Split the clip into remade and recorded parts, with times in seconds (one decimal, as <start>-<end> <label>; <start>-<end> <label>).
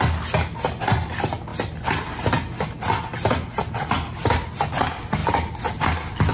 0.0-6.3 recorded